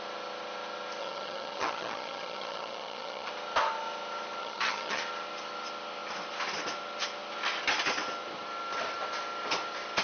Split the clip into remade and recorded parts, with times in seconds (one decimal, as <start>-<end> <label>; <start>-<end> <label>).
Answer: 0.0-1.0 recorded; 1.0-3.3 remade; 3.3-4.4 recorded; 4.4-5.0 remade; 5.0-10.0 recorded